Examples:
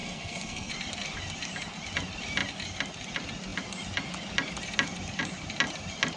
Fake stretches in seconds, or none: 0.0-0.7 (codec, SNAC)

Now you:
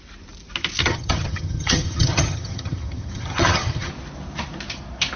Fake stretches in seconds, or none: 0.8-3.9 (vocoder, HiFi-GAN)

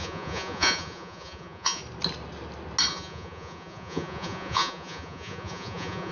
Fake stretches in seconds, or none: 0.0-1.8 (vocoder, Vocos); 2.9-6.1

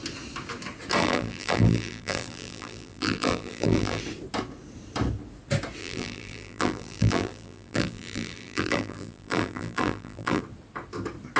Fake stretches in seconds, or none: 1.0-4.0 (vocoder, BigVGAN v2); 5.8-10.4

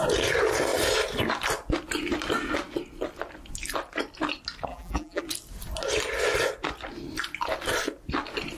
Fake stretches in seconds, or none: 4.7-5.2 (vocoder, BigVGAN v2)

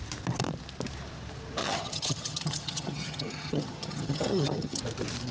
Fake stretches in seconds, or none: 1.6-4.8 (vocoder, HiFi-GAN)